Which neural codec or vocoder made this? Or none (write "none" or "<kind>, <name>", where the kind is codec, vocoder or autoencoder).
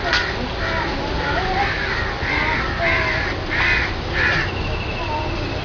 none